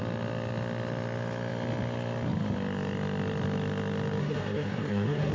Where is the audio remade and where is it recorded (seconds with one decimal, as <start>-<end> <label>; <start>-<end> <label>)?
0.0-4.2 recorded; 4.2-5.3 remade